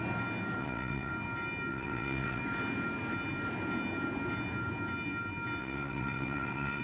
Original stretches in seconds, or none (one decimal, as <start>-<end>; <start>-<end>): 0.0-0.6; 1.1-1.7; 2.4-5.6